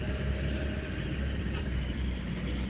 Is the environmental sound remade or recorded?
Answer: remade